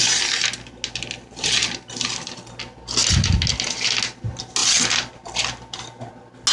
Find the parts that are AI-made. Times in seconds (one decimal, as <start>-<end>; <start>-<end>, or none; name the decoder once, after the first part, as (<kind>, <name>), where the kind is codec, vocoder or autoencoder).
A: none